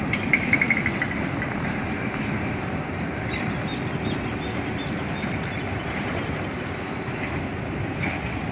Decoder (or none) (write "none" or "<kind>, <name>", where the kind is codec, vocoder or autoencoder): vocoder, BigVGAN v2